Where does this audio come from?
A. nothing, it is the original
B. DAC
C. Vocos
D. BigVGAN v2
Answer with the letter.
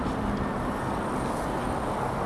A